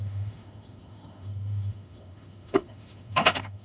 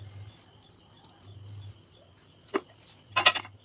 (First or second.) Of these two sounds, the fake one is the first